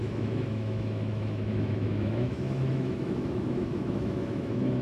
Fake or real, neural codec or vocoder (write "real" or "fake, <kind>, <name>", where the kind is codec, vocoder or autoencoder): fake, autoencoder, DAC-VAE